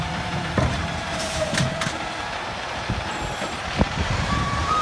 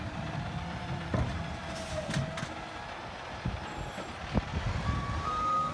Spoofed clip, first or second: first